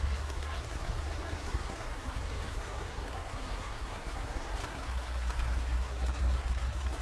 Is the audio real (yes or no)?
no